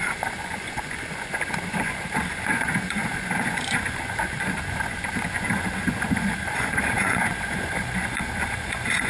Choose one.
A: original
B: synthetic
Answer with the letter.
B